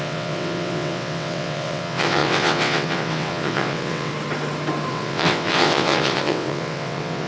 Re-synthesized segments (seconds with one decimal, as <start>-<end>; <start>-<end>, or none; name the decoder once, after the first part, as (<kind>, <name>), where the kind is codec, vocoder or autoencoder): 0.0-4.1 (vocoder, WaveNeXt); 4.9-7.3